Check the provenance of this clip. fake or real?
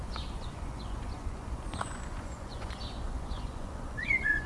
fake